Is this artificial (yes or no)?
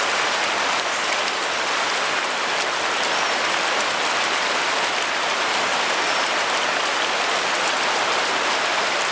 no